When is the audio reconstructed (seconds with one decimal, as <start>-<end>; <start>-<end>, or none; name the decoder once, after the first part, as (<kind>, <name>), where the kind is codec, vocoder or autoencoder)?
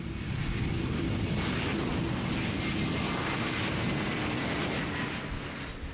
none